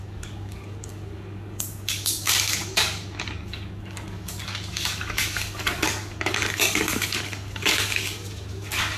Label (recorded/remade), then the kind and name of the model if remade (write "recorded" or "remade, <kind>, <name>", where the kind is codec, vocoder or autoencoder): remade, codec, DAC